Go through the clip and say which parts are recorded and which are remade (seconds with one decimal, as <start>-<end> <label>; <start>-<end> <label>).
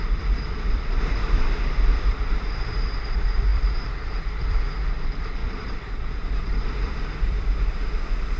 0.0-8.4 remade